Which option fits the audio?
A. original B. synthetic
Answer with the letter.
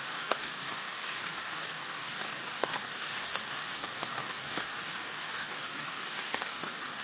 B